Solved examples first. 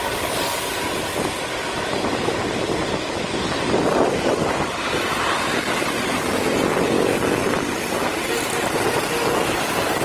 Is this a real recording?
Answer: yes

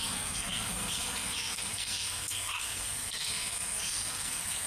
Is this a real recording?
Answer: no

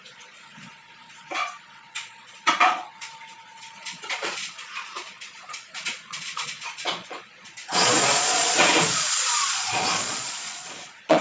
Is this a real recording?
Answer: no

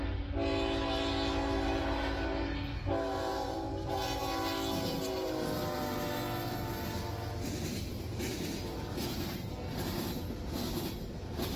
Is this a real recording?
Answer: yes